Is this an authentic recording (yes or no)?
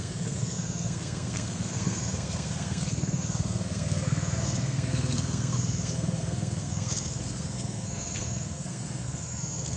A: no